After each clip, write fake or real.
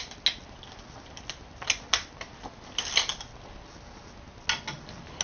real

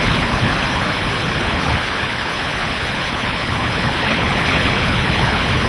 fake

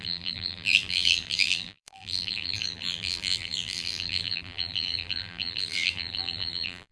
fake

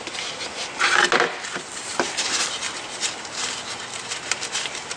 real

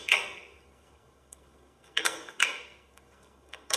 fake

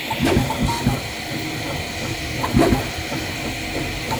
real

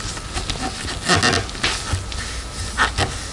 real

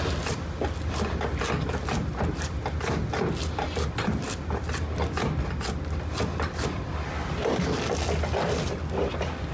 real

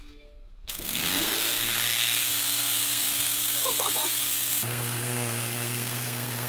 fake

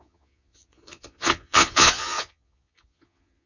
fake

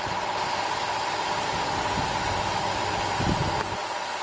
real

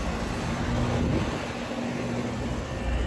real